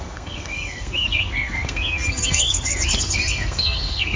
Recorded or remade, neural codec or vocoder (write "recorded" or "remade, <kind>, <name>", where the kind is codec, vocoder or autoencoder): remade, codec, SNAC